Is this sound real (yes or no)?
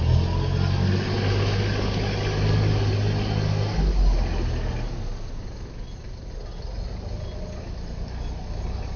yes